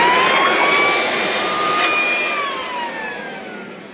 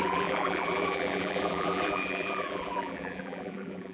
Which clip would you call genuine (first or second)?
first